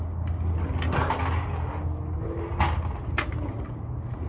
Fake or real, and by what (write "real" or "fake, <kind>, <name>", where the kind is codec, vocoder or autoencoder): real